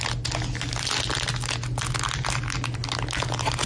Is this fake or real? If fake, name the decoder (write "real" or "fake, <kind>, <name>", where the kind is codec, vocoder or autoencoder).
real